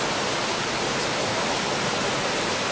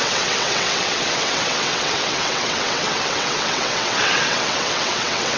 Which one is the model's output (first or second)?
second